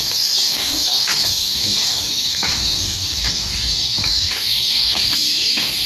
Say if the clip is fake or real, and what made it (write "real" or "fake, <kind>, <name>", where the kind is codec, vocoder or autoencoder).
fake, codec, DAC